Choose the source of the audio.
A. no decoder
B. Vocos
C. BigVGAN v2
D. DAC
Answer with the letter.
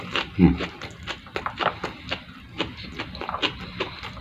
A